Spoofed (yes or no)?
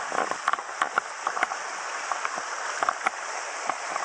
no